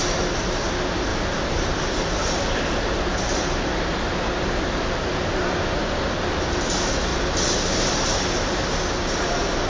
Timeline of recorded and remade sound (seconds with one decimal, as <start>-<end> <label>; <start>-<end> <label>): 0.0-1.1 recorded; 1.1-3.6 remade; 3.6-7.1 recorded; 7.1-8.5 remade; 8.5-9.7 recorded